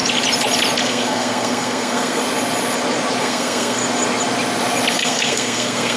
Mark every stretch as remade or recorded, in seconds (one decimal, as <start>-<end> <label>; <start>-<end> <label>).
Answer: 0.0-0.8 recorded; 0.8-2.2 remade; 2.2-3.2 recorded; 3.2-3.8 remade; 3.8-4.9 recorded; 4.9-6.0 remade